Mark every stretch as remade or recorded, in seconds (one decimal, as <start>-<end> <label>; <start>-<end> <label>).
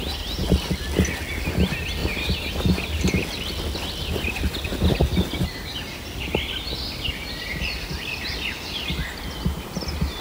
0.0-10.2 recorded